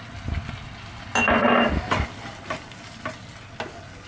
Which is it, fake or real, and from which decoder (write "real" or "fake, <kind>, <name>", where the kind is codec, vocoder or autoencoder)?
real